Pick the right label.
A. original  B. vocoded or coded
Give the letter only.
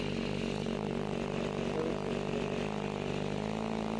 A